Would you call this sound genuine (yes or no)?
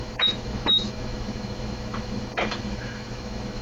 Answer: no